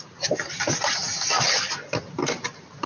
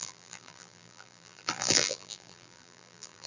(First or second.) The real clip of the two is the first